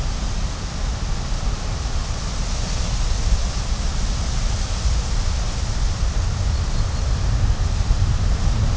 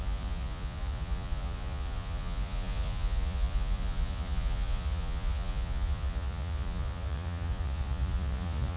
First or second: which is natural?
first